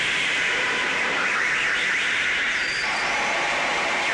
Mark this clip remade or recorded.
remade